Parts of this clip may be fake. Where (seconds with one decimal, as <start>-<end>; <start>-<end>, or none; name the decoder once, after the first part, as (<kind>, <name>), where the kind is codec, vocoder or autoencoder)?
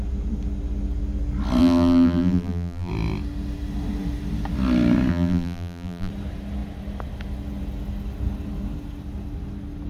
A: 1.6-2.9 (vocoder, BigVGAN v2); 5.1-6.1